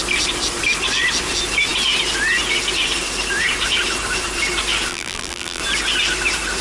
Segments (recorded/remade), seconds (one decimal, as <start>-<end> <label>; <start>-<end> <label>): 0.0-4.9 recorded; 4.9-5.6 remade; 5.6-6.6 recorded

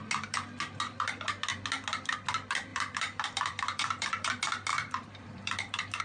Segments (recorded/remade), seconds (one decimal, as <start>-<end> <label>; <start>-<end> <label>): 0.0-2.7 recorded; 2.7-4.3 remade; 4.3-4.7 recorded; 4.7-6.0 remade

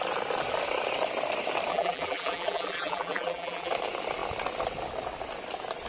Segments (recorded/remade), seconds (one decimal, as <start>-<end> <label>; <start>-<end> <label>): 0.0-1.7 recorded; 1.7-3.7 remade; 3.7-5.9 recorded

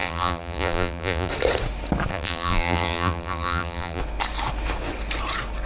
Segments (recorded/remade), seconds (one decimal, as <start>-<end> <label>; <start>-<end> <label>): 0.0-1.3 remade; 1.3-2.1 recorded; 2.1-4.0 remade; 4.0-5.7 recorded

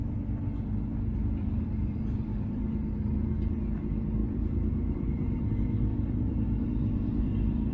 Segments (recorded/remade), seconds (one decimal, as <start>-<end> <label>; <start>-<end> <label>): 0.0-0.9 recorded; 0.9-2.9 remade; 2.9-4.2 recorded; 4.2-5.5 remade; 5.5-5.9 recorded; 5.9-7.7 remade

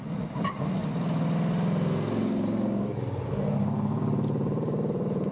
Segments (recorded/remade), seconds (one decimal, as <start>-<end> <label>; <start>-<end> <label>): 0.0-0.8 remade; 0.8-4.0 recorded; 4.0-5.3 remade

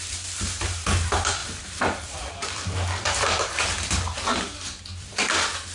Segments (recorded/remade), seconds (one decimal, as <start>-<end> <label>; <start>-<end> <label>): 0.0-1.4 recorded; 1.4-4.8 remade; 4.8-5.7 recorded

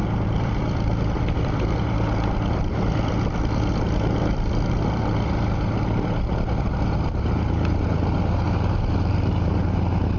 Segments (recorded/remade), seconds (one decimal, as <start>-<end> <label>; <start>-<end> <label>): 0.0-5.0 remade; 5.0-8.9 recorded; 8.9-9.5 remade; 9.5-10.2 recorded